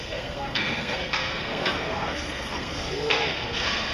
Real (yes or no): no